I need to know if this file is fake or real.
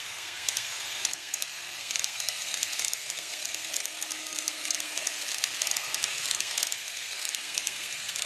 fake